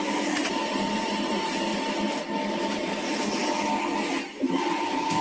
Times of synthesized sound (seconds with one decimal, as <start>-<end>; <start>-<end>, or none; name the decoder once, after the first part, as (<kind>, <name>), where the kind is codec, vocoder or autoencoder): 0.0-1.7 (vocoder, BigVGAN v2); 2.5-3.0; 4.4-5.2